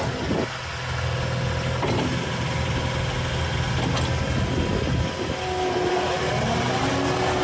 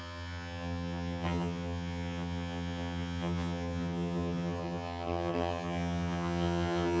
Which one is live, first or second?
first